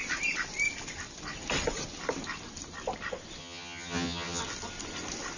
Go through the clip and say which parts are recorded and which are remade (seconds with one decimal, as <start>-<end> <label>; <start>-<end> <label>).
0.0-3.4 recorded; 3.4-4.4 remade; 4.4-5.4 recorded